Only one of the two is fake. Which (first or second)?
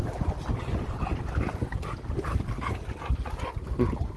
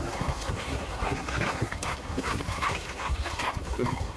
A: second